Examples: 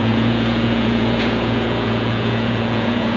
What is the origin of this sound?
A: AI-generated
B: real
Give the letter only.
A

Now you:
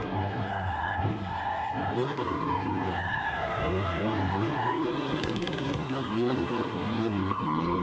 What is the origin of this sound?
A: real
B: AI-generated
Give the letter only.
B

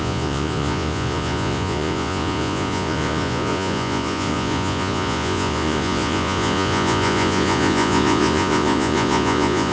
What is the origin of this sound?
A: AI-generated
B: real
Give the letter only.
A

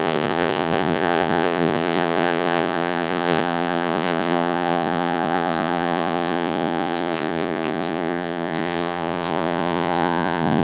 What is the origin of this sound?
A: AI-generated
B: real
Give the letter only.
A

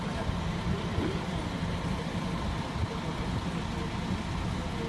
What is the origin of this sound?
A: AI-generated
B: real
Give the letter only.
B